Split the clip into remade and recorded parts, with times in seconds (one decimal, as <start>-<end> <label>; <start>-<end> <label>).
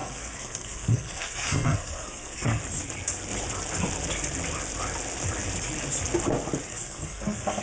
0.0-2.6 remade; 2.6-6.7 recorded; 6.7-7.6 remade